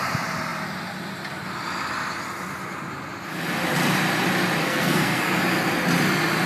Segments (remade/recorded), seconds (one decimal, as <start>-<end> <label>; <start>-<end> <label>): 0.0-4.6 recorded; 4.6-5.4 remade; 5.4-6.5 recorded